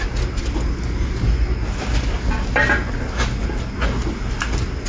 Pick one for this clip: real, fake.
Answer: real